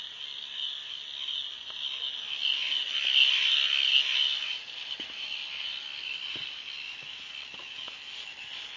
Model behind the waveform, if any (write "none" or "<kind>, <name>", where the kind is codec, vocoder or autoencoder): none